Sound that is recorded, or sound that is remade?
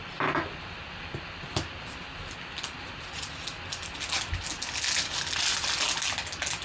recorded